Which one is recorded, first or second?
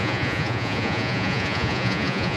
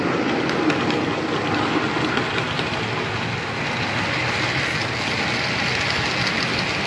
second